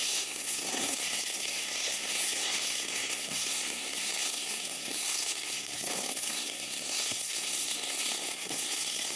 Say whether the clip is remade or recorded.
remade